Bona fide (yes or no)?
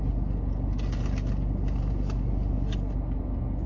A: yes